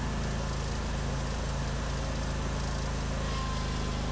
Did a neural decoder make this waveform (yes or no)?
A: no